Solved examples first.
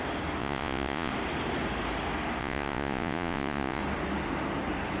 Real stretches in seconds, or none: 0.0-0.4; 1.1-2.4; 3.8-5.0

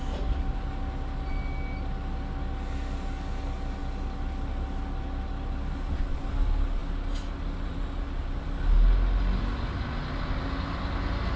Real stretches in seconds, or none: 0.0-11.4

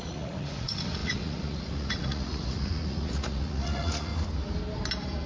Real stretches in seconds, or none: 4.1-5.3

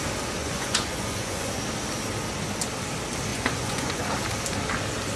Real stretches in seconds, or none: 0.0-0.4; 1.6-3.3; 4.0-5.2

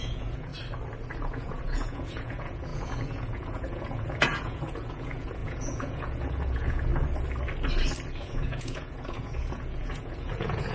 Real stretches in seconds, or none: 0.5-1.2; 6.9-8.2